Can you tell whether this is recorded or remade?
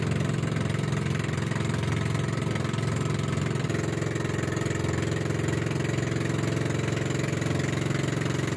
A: recorded